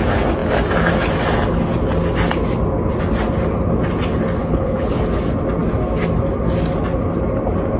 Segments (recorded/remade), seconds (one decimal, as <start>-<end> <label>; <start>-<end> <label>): 0.0-4.4 recorded; 4.4-5.0 remade; 5.0-7.8 recorded